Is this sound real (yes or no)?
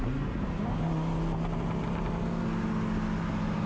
yes